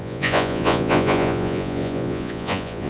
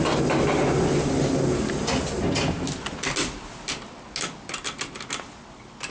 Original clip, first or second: second